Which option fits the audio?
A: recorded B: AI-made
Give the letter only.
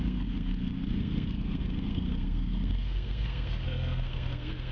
B